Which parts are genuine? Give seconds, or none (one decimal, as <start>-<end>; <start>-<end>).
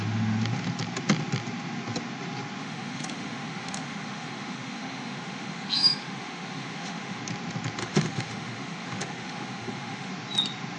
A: 0.0-2.6; 7.2-7.8; 10.1-10.8